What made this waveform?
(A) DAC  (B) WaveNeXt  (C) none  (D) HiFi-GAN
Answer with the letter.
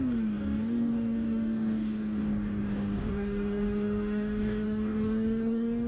A